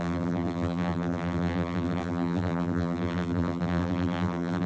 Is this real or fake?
fake